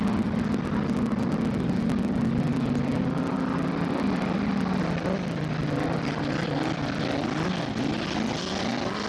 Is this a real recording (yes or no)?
yes